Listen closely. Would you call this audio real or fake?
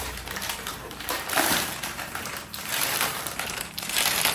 fake